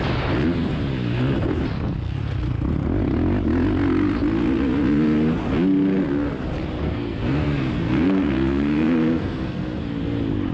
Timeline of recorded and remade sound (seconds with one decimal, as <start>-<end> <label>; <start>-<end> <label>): 0.0-6.8 recorded; 6.8-9.8 remade; 9.8-10.5 recorded